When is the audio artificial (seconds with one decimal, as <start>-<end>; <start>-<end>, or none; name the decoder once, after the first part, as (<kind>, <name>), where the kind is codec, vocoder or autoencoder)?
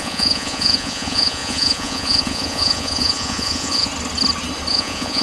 0.0-3.9 (vocoder, Vocos); 4.7-5.2